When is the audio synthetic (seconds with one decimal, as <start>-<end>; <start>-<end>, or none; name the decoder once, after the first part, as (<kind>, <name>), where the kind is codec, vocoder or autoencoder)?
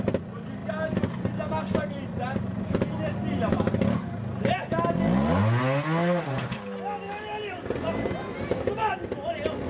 none